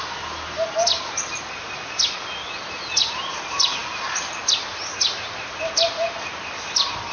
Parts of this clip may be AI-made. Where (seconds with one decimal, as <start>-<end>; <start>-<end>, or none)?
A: none

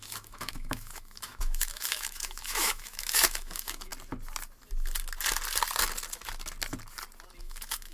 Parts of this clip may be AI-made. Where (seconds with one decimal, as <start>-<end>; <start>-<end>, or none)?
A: 0.0-3.9; 7.4-7.9

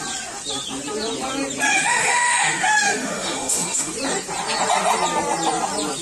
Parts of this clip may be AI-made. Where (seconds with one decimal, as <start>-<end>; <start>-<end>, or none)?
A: 1.7-3.9

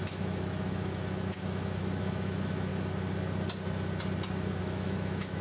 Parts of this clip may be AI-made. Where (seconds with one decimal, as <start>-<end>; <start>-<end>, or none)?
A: 0.0-2.7; 4.6-5.4

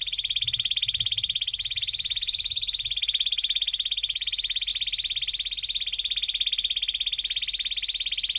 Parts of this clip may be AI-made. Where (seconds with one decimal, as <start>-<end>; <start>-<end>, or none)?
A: 0.0-4.7

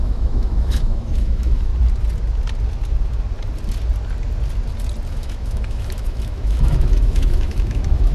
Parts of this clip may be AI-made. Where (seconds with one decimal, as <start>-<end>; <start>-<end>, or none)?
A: 0.0-1.7; 5.1-8.1